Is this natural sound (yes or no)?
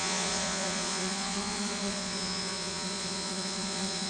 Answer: no